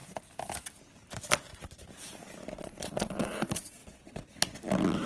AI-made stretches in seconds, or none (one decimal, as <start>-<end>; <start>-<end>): 2.6-3.8